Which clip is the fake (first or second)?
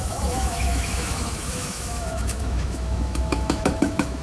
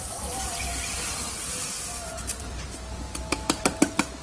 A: first